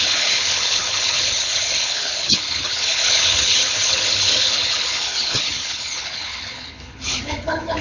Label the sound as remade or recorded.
remade